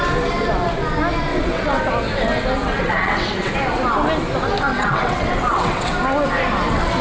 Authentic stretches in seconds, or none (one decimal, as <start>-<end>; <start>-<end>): 0.0-1.3; 1.8-2.6; 3.5-4.7; 5.9-7.0

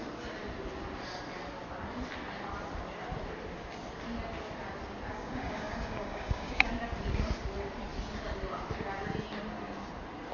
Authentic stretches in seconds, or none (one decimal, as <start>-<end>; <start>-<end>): 0.0-5.1; 6.7-10.3

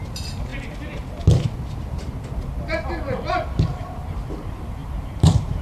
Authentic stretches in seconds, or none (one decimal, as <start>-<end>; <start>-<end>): 0.5-3.3

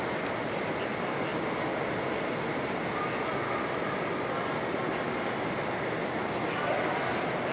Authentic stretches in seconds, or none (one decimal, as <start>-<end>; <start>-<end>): 0.0-7.5

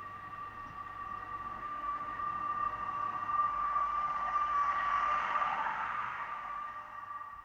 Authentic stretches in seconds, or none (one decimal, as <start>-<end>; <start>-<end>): 0.0-1.6; 2.2-3.5; 6.7-7.4